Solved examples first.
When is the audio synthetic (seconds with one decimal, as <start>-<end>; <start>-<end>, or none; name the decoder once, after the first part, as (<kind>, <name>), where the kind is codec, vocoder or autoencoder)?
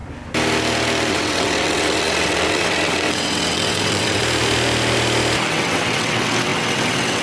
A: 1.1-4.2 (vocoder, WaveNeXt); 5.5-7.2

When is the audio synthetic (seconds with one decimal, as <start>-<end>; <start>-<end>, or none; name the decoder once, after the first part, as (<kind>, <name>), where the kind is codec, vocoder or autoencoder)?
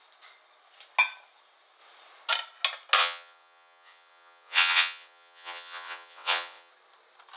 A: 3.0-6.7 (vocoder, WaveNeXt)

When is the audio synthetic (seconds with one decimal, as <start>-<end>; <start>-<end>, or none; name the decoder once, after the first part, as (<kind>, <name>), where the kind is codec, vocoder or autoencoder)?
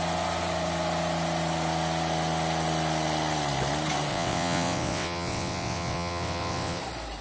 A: 4.1-6.8 (vocoder, WaveNeXt)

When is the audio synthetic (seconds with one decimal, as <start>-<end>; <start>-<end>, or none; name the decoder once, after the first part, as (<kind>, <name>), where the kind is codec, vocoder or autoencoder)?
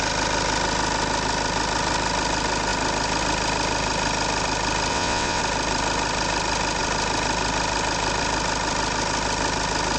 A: 4.9-5.4 (vocoder, WaveNeXt)